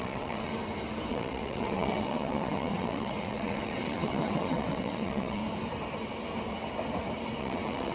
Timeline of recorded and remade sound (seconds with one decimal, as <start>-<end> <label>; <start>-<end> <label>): 0.0-0.5 remade; 0.5-1.1 recorded; 1.1-5.4 remade; 5.4-7.4 recorded; 7.4-7.9 remade